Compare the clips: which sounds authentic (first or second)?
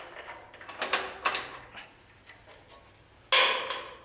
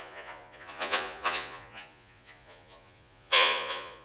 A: first